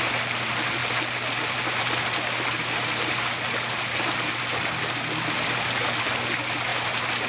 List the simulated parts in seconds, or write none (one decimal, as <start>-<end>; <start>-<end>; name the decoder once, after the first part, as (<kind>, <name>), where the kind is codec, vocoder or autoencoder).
none